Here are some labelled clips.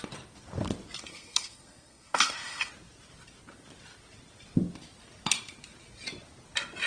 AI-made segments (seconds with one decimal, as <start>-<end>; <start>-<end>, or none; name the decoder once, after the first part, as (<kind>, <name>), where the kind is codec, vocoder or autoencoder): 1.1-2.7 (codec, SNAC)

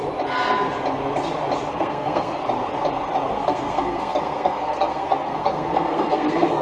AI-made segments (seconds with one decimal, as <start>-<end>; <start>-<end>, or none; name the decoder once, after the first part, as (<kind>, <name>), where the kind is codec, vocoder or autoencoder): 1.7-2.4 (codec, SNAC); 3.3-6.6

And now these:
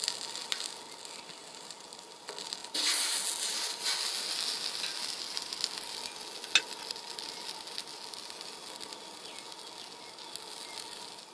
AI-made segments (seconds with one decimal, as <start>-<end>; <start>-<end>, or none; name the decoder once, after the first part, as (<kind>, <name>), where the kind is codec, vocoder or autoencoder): none